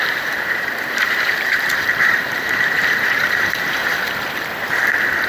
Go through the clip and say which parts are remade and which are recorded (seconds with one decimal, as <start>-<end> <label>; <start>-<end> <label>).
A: 0.0-3.8 remade; 3.8-5.3 recorded